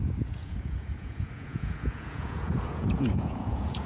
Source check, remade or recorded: remade